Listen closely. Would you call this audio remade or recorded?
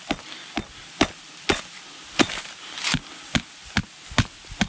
recorded